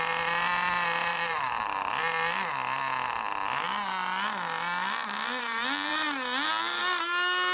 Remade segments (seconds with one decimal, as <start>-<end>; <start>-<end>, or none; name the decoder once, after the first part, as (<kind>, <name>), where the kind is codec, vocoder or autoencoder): 1.1-1.9 (vocoder, BigVGAN v2)